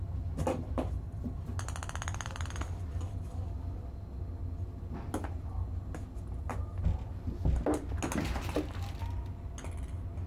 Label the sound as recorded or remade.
recorded